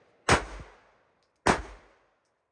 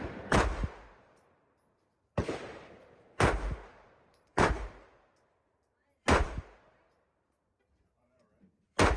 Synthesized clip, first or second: second